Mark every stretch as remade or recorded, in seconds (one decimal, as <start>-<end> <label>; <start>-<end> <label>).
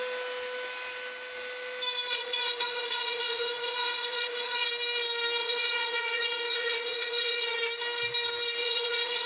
0.0-2.1 recorded; 2.1-4.7 remade; 4.7-5.4 recorded; 5.4-7.6 remade; 7.6-8.6 recorded; 8.6-9.3 remade